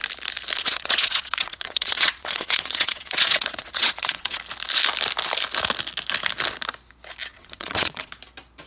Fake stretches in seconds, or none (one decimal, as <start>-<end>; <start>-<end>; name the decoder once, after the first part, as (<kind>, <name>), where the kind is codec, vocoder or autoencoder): 0.6-4.4 (vocoder, WaveNeXt); 7.3-8.1